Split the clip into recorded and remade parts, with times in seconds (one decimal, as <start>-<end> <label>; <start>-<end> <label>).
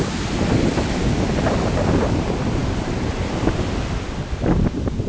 0.0-5.1 recorded